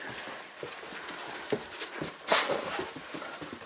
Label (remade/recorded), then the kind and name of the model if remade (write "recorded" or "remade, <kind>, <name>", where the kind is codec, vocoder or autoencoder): recorded